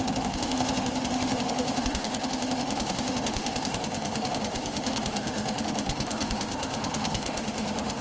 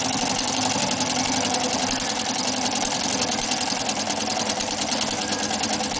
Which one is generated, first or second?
first